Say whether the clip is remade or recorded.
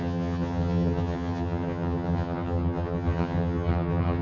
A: remade